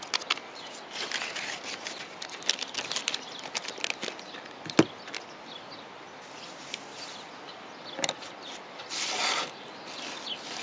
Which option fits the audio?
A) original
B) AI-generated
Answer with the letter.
A